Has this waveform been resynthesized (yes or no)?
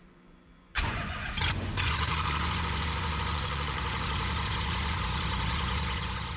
yes